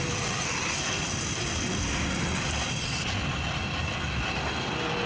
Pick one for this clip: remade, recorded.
recorded